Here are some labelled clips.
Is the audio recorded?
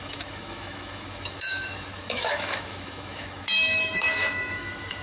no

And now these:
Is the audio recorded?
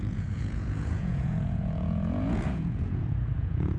no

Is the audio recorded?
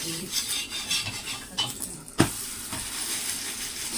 no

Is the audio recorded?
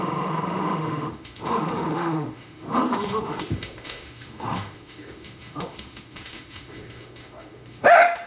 no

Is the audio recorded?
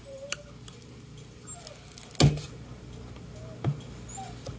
yes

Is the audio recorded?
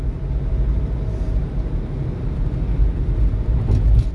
yes